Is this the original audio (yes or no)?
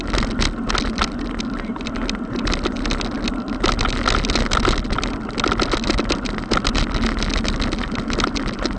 yes